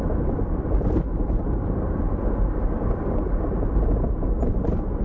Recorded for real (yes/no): no